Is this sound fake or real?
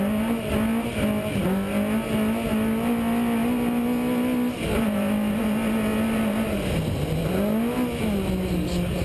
real